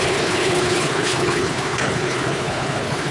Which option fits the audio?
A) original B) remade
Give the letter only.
B